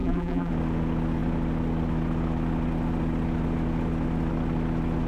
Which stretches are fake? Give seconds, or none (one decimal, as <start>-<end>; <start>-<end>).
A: 0.0-0.5